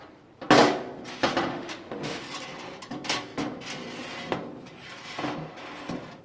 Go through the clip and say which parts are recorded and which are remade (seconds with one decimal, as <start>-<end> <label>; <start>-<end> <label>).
0.0-1.5 recorded; 1.5-2.2 remade; 2.2-6.2 recorded